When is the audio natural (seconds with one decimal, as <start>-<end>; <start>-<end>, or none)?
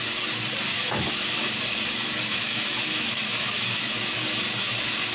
0.0-0.7; 1.5-2.3; 3.9-5.1